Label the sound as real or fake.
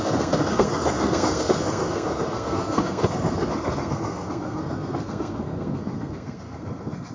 fake